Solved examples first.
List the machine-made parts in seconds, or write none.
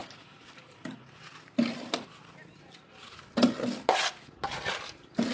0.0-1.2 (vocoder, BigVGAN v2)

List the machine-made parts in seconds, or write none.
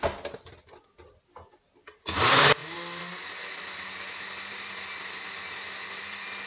none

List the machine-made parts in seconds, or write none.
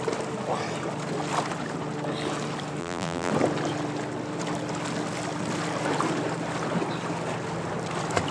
2.8-3.3 (vocoder, BigVGAN v2)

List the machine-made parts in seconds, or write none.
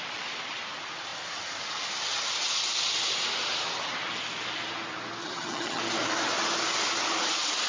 5.2-5.8 (vocoder, HiFi-GAN)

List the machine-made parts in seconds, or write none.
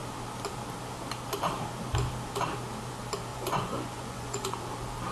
3.3-4.6 (vocoder, Vocos)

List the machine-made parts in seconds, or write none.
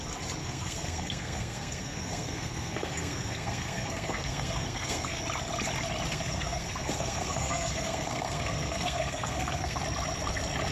0.4-5.2 (codec, SNAC); 6.1-9.8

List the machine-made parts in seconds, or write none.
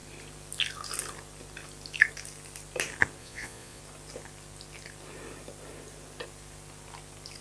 3.2-3.8 (vocoder, Vocos)